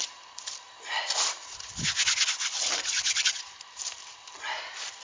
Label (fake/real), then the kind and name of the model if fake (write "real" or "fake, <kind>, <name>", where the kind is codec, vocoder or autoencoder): real